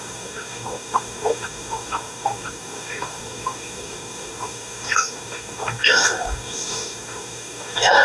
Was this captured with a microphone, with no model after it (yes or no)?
no